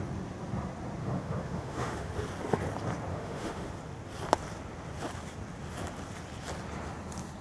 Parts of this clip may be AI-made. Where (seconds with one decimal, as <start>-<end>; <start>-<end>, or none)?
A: 1.0-2.1; 3.1-3.7